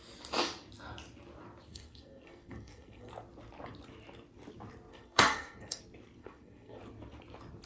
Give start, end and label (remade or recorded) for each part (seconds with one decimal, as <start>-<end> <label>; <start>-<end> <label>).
0.0-1.7 recorded; 1.7-3.1 remade; 3.1-4.9 recorded; 4.9-5.8 remade; 5.8-6.2 recorded; 6.2-6.8 remade; 6.8-7.7 recorded